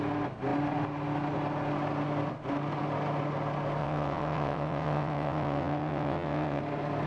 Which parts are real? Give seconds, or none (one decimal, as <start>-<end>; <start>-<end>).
0.0-3.8; 6.6-7.1